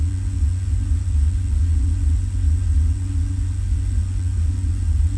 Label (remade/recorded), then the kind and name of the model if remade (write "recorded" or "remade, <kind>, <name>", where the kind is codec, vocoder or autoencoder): remade, vocoder, Vocos